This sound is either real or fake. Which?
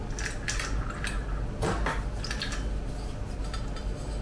real